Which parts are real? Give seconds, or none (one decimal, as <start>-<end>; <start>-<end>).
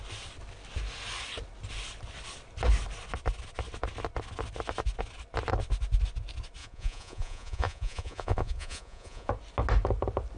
0.0-6.6; 9.3-10.4